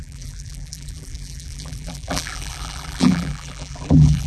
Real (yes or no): no